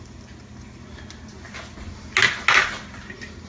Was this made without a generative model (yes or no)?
yes